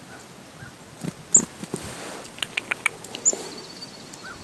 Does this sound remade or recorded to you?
recorded